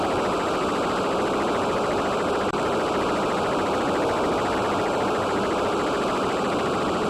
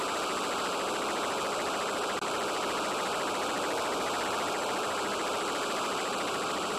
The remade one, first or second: first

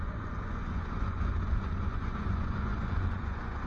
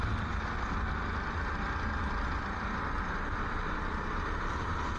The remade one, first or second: first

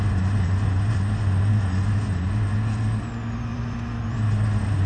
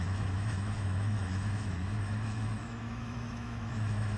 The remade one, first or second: second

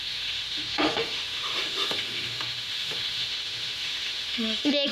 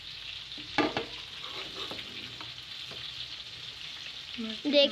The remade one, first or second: first